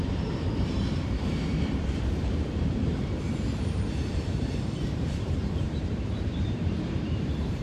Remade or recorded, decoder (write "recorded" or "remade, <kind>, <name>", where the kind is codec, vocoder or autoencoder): remade, vocoder, BigVGAN v2